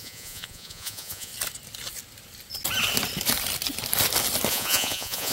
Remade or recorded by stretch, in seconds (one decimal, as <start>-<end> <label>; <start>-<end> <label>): 0.0-1.3 remade; 1.3-4.5 recorded; 4.5-5.3 remade